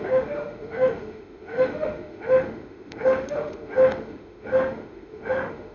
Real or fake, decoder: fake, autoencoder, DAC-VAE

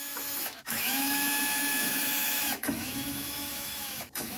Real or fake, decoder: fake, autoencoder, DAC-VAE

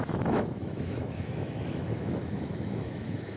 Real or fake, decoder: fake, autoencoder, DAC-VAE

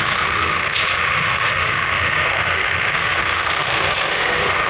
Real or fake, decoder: fake, autoencoder, DAC-VAE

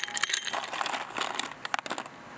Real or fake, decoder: real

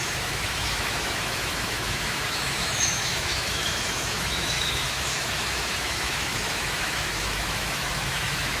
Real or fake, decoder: fake, autoencoder, DAC-VAE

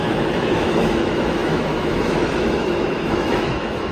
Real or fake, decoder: fake, autoencoder, DAC-VAE